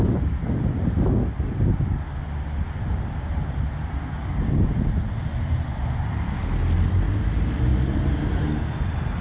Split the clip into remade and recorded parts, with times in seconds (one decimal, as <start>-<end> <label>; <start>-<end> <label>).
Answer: 0.0-9.2 recorded